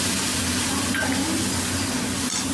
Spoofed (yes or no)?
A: no